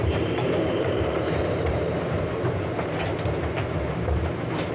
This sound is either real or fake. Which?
fake